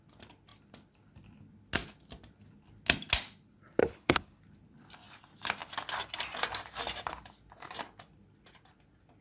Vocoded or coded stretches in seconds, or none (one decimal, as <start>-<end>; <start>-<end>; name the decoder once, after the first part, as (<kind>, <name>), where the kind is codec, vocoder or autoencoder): 3.8-4.4 (codec, HILCodec)